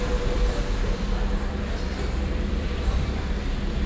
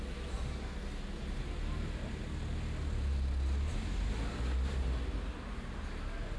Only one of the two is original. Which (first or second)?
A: second